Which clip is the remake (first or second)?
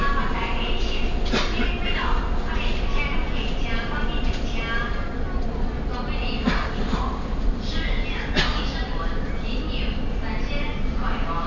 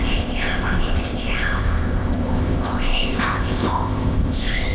second